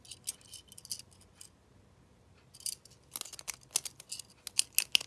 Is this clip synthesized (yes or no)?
no